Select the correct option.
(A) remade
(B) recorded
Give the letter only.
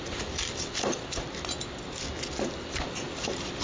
B